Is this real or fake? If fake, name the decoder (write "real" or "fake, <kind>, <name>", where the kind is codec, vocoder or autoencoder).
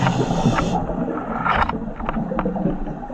real